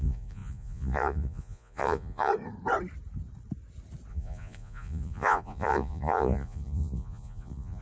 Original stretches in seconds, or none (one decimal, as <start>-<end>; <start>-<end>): 2.3-4.1